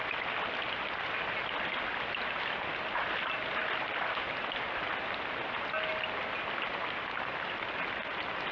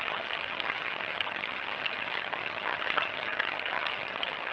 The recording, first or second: first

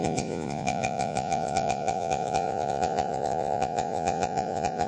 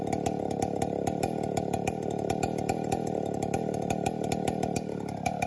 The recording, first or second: second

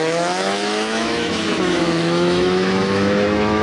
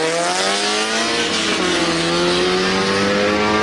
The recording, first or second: second